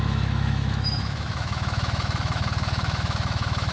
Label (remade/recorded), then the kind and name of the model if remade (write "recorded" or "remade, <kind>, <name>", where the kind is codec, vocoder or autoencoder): remade, autoencoder, DAC-VAE